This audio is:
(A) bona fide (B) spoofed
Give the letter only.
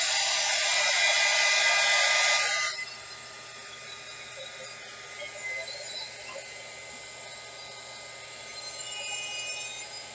A